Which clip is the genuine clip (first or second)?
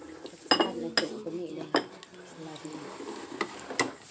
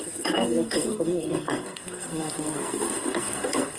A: first